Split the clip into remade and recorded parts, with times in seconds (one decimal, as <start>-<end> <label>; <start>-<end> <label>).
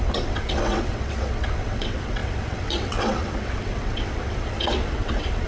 0.0-5.5 remade